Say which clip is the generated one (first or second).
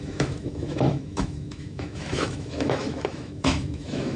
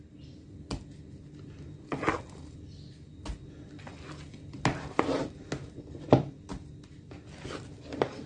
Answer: first